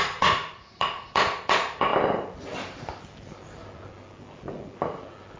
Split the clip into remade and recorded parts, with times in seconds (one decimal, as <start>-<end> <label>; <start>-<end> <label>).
0.0-1.9 remade; 1.9-5.4 recorded